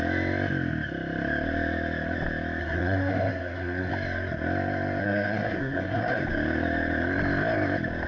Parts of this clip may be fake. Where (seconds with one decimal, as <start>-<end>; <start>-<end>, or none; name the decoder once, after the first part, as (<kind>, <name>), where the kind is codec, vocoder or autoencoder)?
2.6-3.9 (codec, SNAC); 5.0-6.2